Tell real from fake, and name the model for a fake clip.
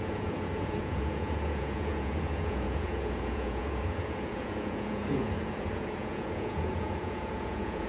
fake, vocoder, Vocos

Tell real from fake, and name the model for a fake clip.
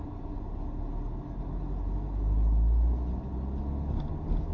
real